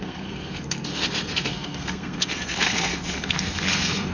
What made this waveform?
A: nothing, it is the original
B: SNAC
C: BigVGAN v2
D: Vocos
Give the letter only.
B